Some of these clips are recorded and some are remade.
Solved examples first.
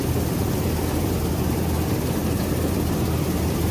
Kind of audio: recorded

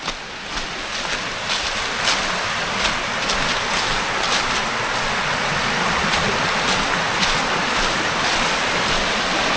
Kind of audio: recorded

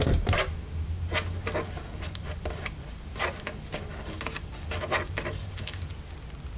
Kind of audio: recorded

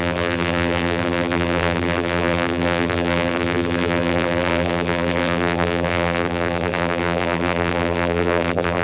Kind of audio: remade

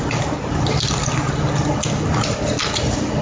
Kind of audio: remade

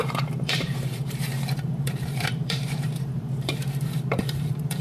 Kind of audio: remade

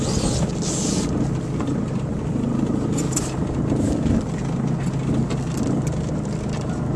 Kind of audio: recorded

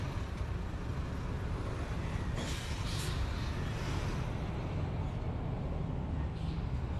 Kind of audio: recorded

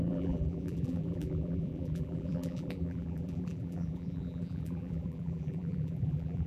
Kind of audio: remade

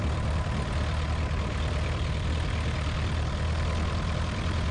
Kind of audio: remade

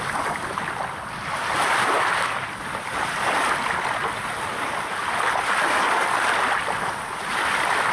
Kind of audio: recorded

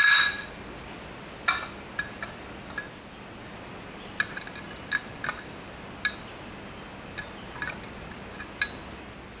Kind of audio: recorded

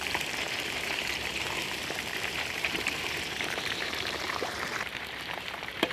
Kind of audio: remade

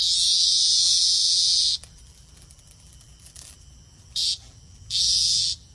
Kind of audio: remade